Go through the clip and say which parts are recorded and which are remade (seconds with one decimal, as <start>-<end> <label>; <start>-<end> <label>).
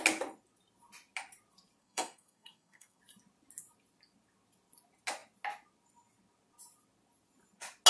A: 0.0-1.8 recorded; 1.8-3.0 remade; 3.0-7.9 recorded